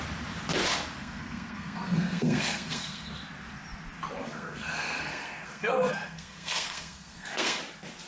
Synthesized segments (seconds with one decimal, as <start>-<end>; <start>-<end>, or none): 1.0-3.1; 4.2-7.6